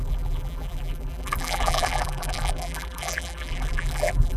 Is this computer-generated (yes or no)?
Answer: yes